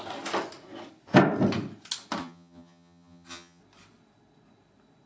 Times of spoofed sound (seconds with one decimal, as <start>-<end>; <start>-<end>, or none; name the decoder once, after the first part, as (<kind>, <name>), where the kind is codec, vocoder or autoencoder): 2.2-3.6 (vocoder, HiFi-GAN)